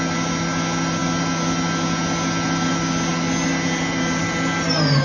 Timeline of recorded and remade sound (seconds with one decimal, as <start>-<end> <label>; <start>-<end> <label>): 0.0-5.0 recorded